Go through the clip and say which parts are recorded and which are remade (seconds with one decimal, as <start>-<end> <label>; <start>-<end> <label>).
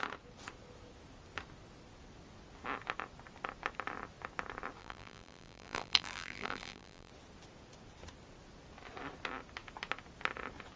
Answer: 0.0-4.8 recorded; 4.8-7.1 remade; 7.1-10.8 recorded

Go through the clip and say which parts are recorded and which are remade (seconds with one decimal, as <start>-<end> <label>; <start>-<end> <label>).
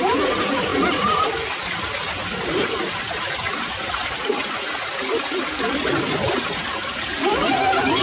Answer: 0.0-8.0 recorded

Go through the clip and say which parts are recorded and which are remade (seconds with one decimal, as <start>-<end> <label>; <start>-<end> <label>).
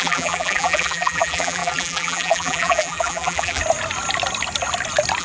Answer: 0.0-3.6 remade; 3.6-5.2 recorded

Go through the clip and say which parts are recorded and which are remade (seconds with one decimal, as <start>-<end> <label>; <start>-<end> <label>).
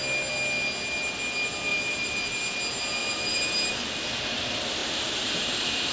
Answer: 0.0-1.7 recorded; 1.7-2.4 remade; 2.4-3.0 recorded; 3.0-3.7 remade; 3.7-4.8 recorded; 4.8-5.9 remade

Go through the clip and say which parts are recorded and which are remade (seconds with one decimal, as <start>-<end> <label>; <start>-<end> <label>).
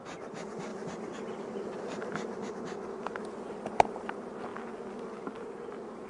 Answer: 0.0-0.7 recorded; 0.7-2.5 remade; 2.5-6.1 recorded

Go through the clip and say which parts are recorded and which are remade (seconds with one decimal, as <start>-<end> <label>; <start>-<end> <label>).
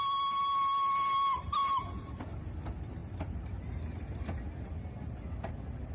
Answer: 0.0-5.9 recorded